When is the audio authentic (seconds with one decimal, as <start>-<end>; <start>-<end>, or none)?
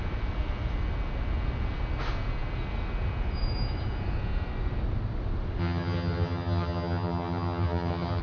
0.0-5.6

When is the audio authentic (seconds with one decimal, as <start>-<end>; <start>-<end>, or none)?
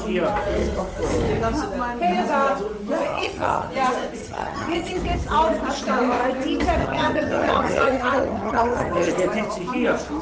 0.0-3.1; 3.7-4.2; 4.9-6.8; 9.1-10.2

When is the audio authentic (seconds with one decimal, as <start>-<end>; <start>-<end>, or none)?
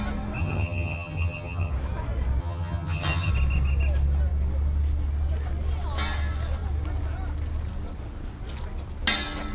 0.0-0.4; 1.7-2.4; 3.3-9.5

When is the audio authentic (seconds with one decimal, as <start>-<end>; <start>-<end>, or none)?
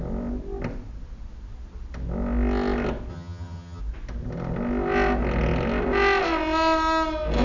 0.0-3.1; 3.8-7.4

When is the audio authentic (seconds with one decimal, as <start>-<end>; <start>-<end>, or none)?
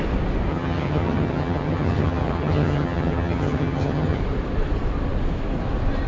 0.0-0.5; 4.2-6.1